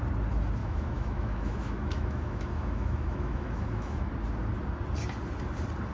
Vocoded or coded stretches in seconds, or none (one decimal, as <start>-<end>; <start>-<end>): 0.6-4.1